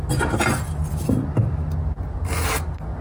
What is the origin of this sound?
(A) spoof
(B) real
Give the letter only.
B